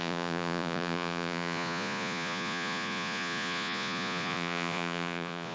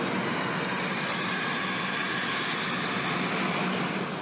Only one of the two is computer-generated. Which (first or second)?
first